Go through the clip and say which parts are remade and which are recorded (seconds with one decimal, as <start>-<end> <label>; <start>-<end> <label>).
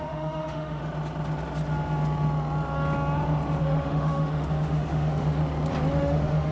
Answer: 0.0-0.8 remade; 0.8-3.6 recorded; 3.6-5.4 remade; 5.4-6.0 recorded; 6.0-6.5 remade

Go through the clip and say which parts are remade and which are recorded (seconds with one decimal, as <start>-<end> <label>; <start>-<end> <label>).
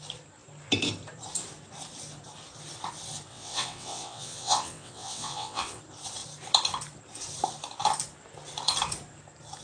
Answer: 0.0-3.3 recorded; 3.3-5.8 remade; 5.8-9.6 recorded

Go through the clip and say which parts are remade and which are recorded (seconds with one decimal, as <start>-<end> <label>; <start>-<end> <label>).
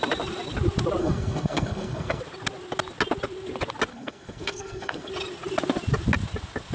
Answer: 0.0-1.0 recorded; 1.0-2.2 remade; 2.2-3.9 recorded; 3.9-5.1 remade; 5.1-6.7 recorded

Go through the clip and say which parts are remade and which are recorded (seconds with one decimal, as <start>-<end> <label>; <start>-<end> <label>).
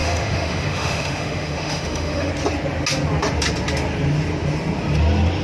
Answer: 0.0-2.3 remade; 2.3-5.4 recorded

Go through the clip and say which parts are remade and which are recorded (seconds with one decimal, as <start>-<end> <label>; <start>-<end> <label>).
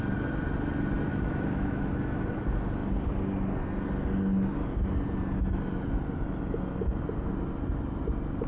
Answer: 0.0-1.1 recorded; 1.1-1.9 remade; 1.9-8.5 recorded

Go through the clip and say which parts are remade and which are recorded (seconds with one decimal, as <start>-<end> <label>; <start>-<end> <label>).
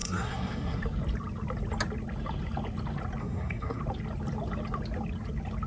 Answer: 0.0-0.8 remade; 0.8-3.2 recorded; 3.2-3.8 remade; 3.8-5.7 recorded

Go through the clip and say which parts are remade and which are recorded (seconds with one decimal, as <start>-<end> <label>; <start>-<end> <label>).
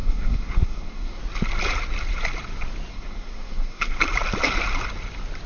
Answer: 0.0-1.2 remade; 1.2-2.9 recorded; 2.9-4.0 remade; 4.0-5.5 recorded